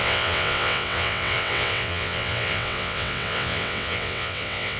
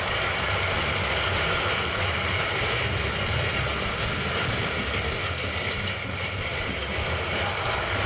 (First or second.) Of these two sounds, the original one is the second